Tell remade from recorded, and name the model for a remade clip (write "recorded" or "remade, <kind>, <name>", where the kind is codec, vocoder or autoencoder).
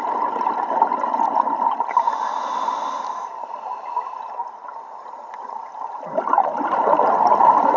recorded